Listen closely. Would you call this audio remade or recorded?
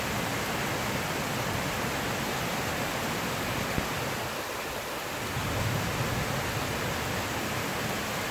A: recorded